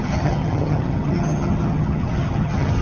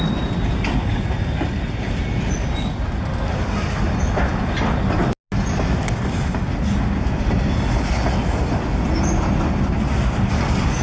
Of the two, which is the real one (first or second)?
second